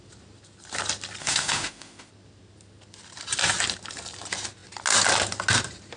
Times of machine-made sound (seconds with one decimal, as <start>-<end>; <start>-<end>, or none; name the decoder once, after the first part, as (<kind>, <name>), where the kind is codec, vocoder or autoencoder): 1.2-2.1 (autoencoder, DAC-VAE)